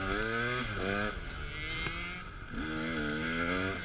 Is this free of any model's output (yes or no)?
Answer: yes